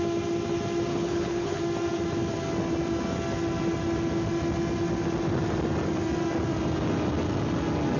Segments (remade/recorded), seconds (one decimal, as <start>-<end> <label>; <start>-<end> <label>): 0.0-0.9 recorded; 0.9-1.6 remade; 1.6-8.0 recorded